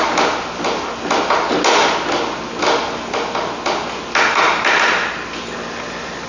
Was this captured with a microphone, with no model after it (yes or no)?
yes